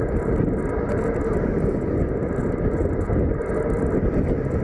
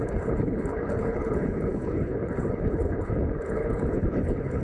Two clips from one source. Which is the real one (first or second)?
first